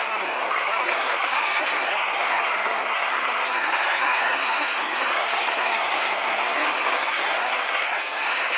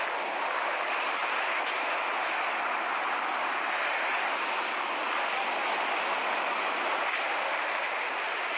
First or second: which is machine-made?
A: first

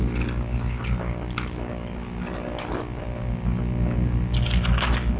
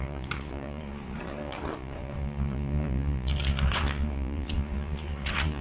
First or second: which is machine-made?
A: second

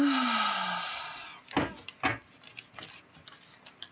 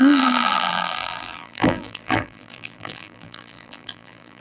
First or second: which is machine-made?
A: second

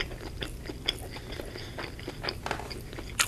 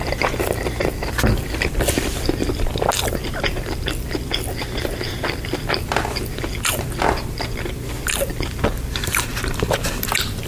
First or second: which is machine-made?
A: second